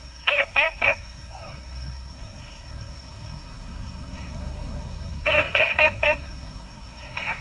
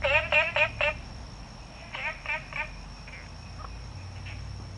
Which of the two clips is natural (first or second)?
second